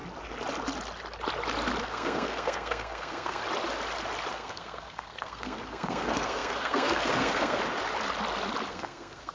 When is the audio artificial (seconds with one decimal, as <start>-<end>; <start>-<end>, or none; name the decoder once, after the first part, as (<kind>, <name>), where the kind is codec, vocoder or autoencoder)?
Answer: 1.8-3.4 (codec, SNAC); 4.3-7.6; 8.7-9.3